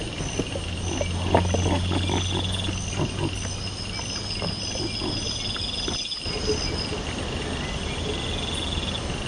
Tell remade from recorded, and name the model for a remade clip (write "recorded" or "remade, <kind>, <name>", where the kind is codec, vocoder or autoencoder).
recorded